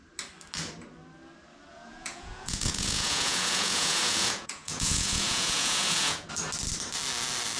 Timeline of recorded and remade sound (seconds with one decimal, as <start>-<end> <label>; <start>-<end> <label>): 0.0-1.7 recorded; 1.7-6.3 remade; 6.3-7.6 recorded